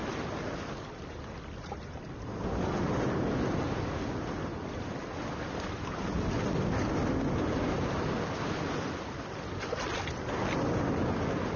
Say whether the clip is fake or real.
real